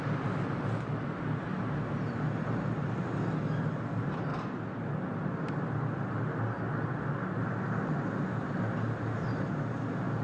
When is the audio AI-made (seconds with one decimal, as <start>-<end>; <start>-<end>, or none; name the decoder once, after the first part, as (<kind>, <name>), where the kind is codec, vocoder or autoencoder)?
none